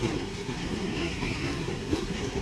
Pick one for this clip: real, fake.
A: fake